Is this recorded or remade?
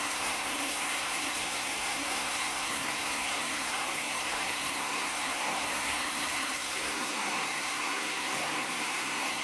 remade